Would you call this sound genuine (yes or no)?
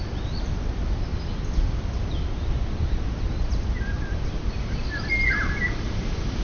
yes